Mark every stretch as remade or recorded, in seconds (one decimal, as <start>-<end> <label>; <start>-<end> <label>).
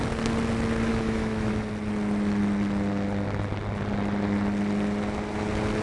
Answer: 0.0-0.9 recorded; 0.9-1.5 remade; 1.5-5.8 recorded